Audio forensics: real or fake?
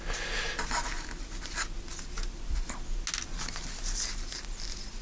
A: real